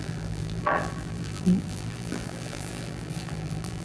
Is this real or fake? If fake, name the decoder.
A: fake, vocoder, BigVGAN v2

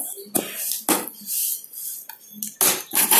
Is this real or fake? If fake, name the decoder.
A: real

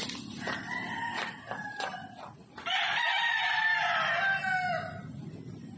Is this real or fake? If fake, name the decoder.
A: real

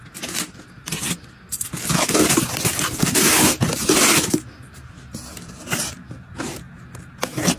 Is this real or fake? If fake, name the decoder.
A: real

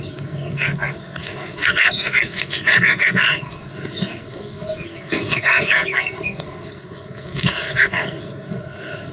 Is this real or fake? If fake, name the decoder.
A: fake, codec, SNAC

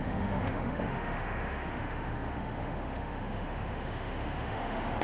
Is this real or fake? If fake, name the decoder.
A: fake, autoencoder, DAC-VAE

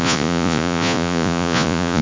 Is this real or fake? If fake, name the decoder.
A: fake, vocoder, Vocos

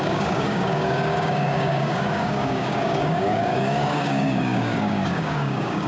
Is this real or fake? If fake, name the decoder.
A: fake, codec, DAC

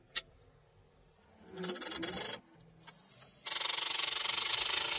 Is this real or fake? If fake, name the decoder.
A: real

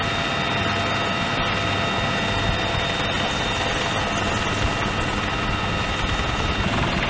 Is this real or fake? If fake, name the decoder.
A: real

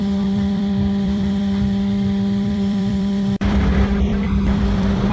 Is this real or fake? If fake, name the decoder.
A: fake, vocoder, BigVGAN v2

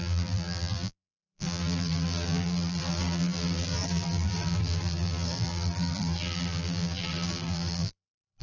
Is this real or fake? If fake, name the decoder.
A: fake, vocoder, BigVGAN v2